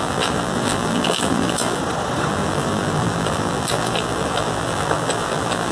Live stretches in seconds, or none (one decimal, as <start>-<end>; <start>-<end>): 1.8-2.3